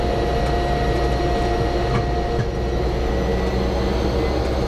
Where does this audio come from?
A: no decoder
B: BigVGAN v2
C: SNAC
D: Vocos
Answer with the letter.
A